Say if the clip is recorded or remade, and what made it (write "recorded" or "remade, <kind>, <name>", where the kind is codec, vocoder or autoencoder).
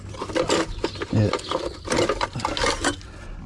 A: recorded